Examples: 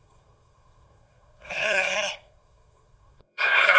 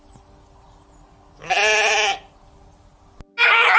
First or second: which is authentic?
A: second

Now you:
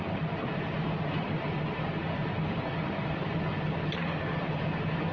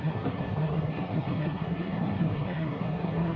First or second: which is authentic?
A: first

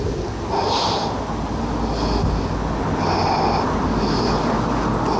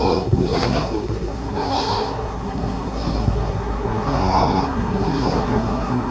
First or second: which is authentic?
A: first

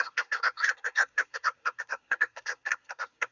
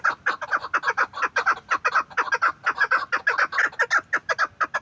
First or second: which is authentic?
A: second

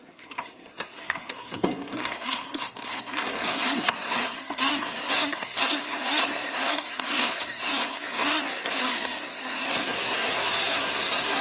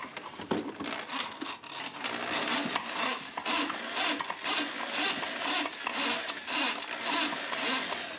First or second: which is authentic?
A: second